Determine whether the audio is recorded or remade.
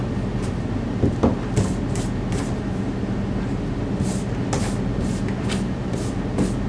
recorded